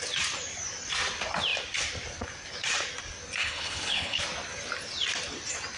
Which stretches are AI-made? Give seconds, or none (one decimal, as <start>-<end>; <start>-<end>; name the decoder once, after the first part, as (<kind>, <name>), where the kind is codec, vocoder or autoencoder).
3.4-4.2 (codec, HILCodec)